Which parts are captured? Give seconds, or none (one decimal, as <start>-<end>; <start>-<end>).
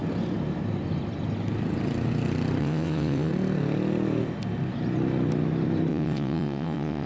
0.0-2.6; 3.3-5.9